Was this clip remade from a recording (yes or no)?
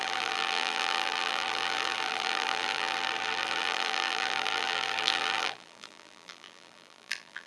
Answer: yes